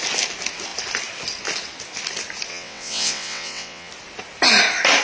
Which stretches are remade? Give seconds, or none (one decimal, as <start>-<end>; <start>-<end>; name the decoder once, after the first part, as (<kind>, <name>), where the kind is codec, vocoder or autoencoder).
2.5-3.9 (vocoder, WaveNeXt)